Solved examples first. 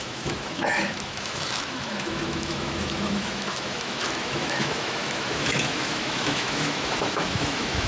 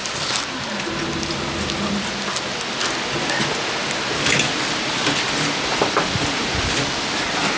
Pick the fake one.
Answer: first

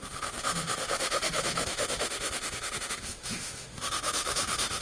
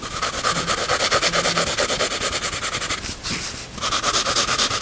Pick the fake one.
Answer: first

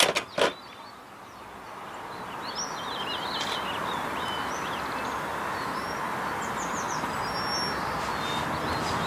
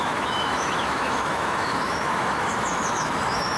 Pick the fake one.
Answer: second